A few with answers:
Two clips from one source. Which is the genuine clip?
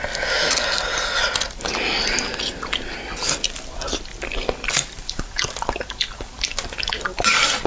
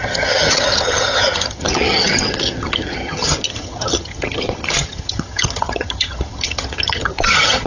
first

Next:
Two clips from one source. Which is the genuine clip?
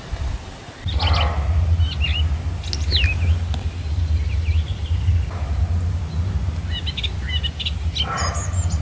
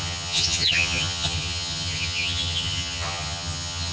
first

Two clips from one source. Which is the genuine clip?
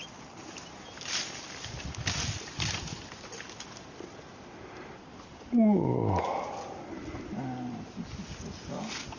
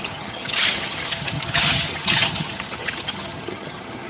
first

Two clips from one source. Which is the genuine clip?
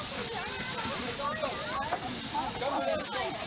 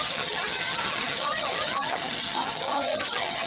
first